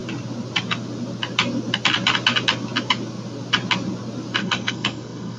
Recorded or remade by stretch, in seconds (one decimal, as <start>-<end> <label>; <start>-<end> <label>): 0.0-4.4 recorded; 4.4-5.4 remade